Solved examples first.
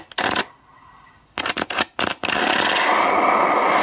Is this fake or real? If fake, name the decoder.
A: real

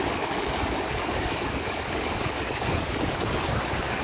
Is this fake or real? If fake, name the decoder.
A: fake, codec, DAC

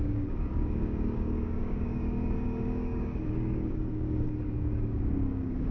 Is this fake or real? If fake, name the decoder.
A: fake, codec, DAC